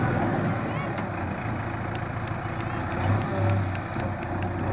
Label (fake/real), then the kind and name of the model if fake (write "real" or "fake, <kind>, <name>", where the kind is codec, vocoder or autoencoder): real